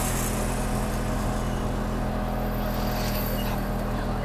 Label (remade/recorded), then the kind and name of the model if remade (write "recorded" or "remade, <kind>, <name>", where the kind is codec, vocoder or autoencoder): recorded